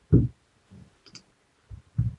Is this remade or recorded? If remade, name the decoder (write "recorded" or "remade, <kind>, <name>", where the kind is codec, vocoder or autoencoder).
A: recorded